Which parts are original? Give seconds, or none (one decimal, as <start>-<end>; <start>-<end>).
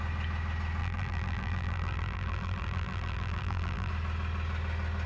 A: 0.0-0.8; 3.9-5.1